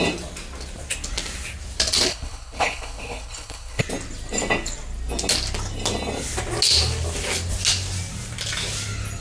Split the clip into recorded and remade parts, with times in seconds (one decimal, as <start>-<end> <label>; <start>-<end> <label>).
0.0-2.1 recorded; 2.1-3.8 remade; 3.8-9.2 recorded